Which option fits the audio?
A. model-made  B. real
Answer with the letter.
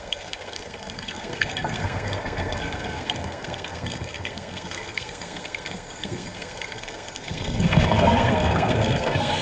A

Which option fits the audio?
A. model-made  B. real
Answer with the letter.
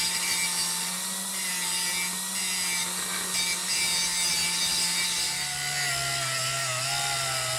B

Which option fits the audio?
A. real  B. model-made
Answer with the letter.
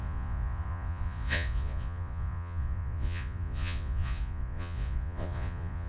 B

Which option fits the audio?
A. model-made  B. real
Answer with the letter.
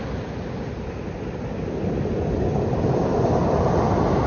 B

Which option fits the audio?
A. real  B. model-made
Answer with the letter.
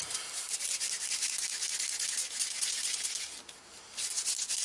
A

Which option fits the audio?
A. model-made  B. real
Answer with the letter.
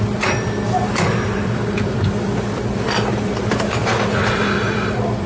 A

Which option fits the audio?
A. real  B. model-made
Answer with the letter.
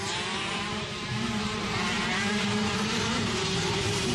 B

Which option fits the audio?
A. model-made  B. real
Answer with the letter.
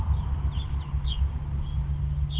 B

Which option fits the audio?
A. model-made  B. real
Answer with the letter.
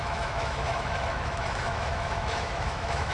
A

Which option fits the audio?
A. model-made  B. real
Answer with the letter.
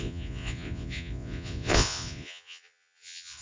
A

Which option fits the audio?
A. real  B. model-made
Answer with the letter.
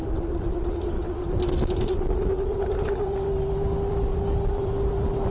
B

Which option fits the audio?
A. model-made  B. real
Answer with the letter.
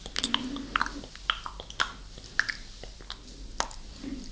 B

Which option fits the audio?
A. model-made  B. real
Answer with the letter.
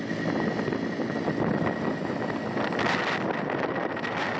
B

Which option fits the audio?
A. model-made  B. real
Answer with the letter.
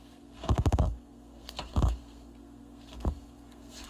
A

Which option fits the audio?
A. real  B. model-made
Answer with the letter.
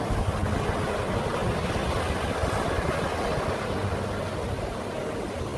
A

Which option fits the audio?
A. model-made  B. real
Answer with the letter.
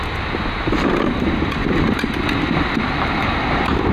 B